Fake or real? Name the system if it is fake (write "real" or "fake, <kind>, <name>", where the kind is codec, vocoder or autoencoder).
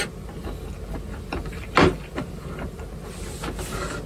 real